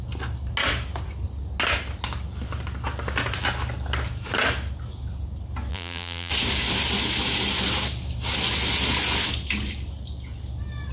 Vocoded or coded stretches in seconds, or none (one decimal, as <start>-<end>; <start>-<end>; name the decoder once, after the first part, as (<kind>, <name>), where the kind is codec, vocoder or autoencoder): 5.7-6.3 (vocoder, BigVGAN v2)